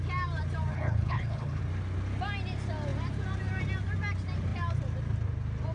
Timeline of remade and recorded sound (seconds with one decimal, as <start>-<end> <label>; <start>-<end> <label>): 0.0-0.7 recorded; 0.7-1.6 remade; 1.6-5.7 recorded